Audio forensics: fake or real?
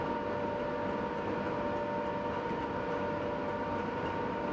real